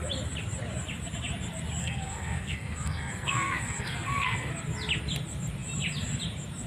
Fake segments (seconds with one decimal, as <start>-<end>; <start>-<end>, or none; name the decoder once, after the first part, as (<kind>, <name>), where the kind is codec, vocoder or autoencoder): 1.8-4.5 (codec, SNAC)

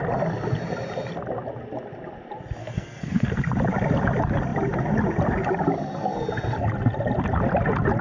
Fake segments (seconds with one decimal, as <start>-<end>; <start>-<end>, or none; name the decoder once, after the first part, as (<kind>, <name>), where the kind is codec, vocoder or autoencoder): 2.6-3.4 (codec, SNAC)

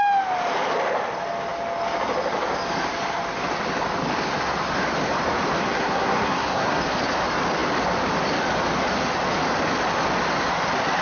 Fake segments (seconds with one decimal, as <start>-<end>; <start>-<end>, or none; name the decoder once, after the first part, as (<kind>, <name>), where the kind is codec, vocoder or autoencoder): 5.6-6.8 (codec, SNAC)

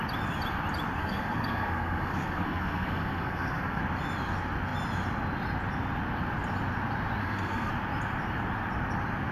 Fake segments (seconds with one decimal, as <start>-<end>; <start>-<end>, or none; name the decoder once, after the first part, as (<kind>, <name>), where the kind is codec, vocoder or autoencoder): 1.0-3.8 (codec, SNAC); 7.2-7.7

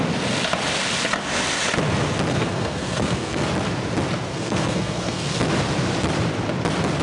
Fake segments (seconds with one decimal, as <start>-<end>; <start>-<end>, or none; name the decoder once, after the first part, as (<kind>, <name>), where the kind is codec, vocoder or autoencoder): 2.3-3.4 (codec, SNAC); 4.3-5.4

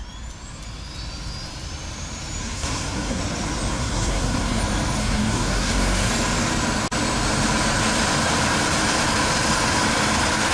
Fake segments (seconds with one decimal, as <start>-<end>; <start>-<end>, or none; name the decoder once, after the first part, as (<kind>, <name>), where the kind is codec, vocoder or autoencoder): 2.4-3.2 (codec, SNAC); 3.7-4.6; 5.0-6.1